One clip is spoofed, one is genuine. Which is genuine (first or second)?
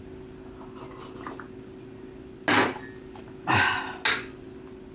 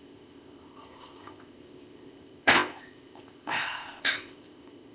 first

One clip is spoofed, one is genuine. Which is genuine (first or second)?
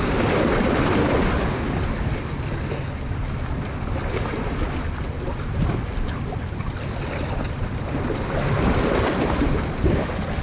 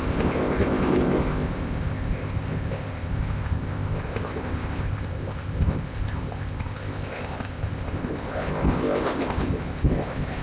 first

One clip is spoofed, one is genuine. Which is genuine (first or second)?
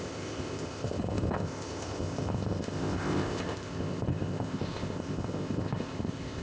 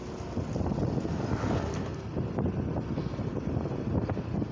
second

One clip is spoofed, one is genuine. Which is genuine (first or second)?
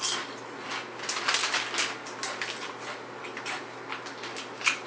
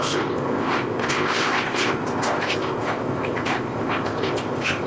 first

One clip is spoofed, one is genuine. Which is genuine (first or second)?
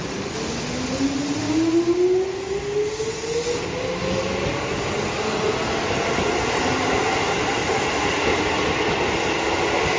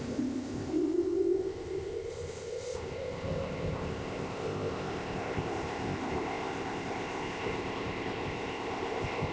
first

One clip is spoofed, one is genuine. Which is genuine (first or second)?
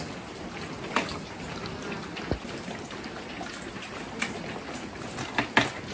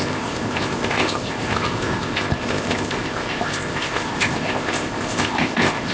first